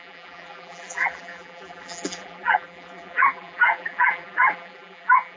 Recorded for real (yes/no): no